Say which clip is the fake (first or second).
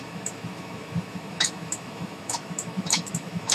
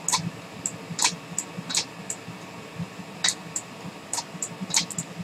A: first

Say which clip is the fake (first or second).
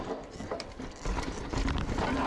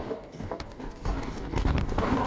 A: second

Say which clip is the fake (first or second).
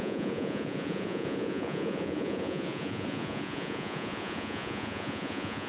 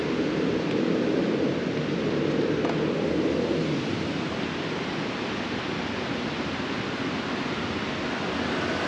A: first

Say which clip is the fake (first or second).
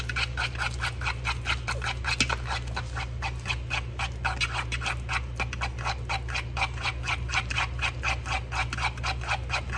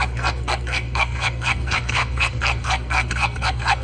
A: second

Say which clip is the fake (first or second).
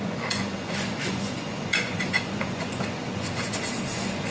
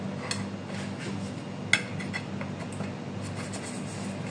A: first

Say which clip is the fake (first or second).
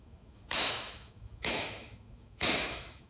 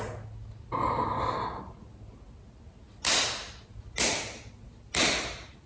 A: first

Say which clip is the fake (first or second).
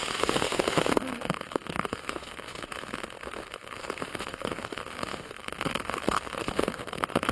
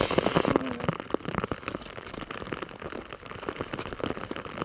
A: first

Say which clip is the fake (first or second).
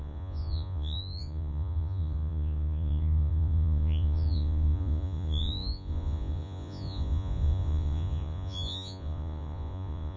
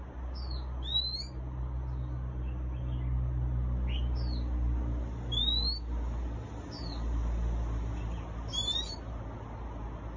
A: first